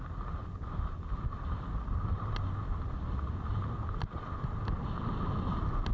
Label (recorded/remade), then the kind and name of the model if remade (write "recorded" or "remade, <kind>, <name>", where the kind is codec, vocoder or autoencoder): recorded